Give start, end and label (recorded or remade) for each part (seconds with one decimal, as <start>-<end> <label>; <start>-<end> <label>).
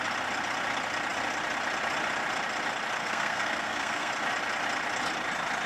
0.0-3.0 recorded; 3.0-4.1 remade; 4.1-5.7 recorded